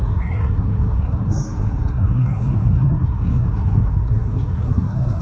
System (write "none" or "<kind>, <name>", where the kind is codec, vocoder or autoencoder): codec, SNAC